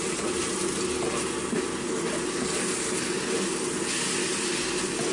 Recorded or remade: recorded